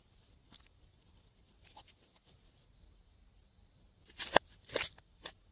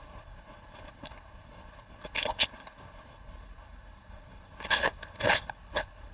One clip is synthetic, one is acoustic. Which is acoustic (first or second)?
first